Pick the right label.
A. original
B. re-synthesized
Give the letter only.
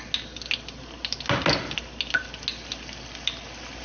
A